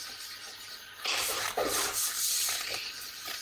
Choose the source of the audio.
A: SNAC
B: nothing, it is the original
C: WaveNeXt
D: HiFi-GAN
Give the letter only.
B